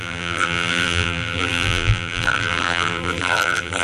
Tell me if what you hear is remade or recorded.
remade